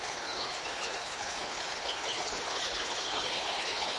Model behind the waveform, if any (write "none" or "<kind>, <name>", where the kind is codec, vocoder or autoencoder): codec, HILCodec